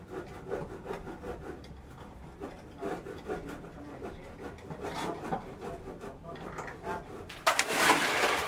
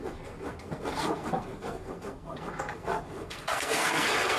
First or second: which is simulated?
second